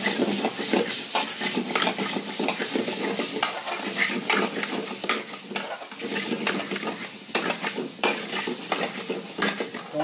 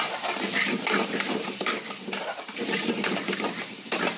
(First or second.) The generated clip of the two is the second